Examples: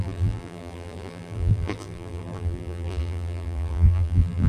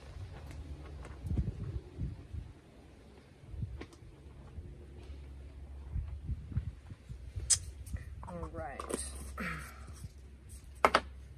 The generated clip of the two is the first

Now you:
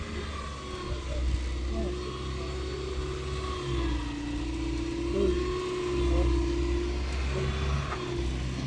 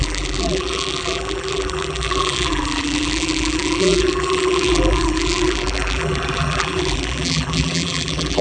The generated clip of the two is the second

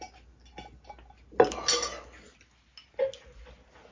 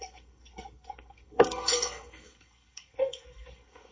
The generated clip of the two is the second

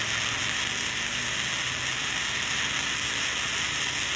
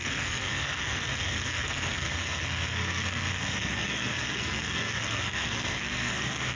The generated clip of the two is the second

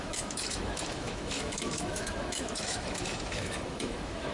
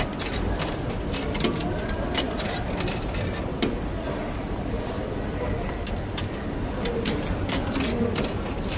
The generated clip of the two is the first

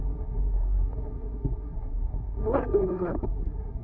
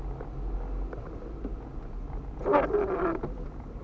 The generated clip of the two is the first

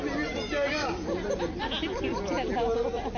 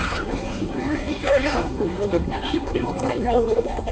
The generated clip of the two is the second